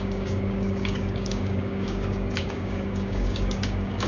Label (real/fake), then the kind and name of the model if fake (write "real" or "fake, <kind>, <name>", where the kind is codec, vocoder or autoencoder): fake, codec, DAC